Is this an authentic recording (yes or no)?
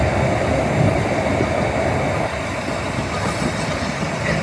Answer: yes